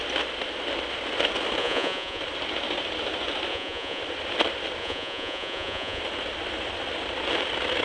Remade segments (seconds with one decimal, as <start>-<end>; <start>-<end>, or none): 1.6-2.2; 3.5-4.0; 4.8-6.0